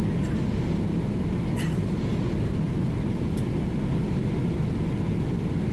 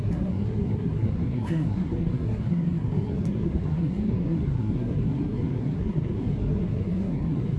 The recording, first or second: first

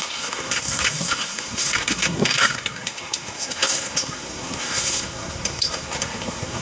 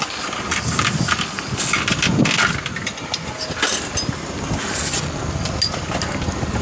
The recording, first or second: second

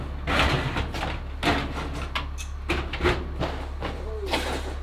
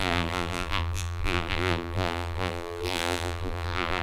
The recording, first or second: first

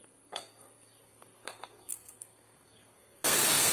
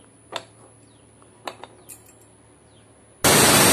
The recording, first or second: second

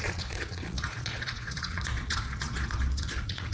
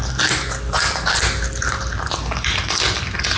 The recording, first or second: second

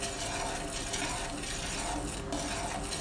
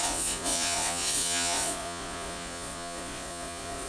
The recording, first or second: first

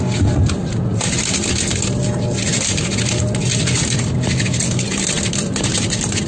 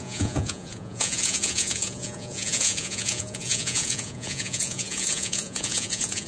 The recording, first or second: first